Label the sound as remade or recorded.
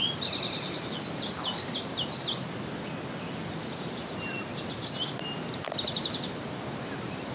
recorded